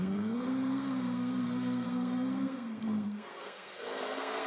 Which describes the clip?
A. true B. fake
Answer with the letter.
B